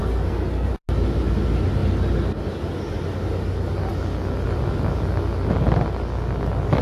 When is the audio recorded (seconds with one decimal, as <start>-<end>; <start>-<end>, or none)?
0.7-6.8